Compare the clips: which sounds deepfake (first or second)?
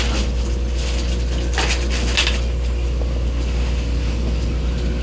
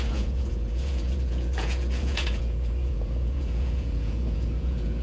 second